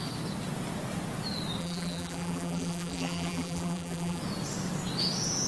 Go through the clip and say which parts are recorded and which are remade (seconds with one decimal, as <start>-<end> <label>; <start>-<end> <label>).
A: 0.0-1.6 recorded; 1.6-4.2 remade; 4.2-5.5 recorded